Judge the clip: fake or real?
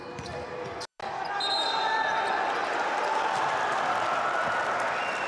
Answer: real